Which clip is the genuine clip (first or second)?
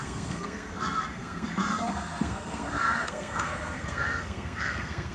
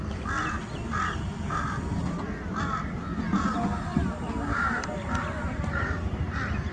second